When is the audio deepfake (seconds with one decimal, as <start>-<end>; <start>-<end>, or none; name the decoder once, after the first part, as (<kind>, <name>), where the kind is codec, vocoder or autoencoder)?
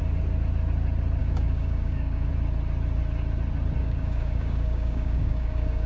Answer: 1.2-2.3 (codec, DAC); 3.8-5.9